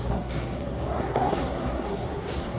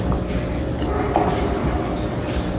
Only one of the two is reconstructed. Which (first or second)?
first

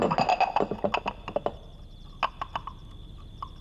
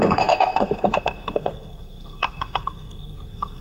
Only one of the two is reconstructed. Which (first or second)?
second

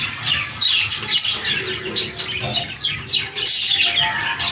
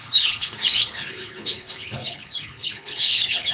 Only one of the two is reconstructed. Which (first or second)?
second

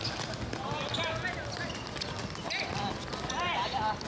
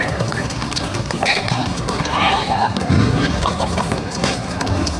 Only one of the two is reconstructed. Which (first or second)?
second